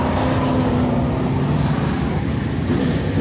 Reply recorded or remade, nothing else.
recorded